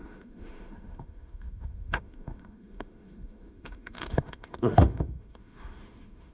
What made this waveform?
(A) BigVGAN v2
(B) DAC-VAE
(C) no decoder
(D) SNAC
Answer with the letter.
B